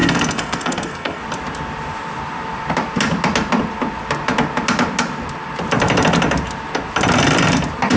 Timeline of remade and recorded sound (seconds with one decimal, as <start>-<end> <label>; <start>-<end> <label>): 0.0-1.2 remade; 1.2-8.0 recorded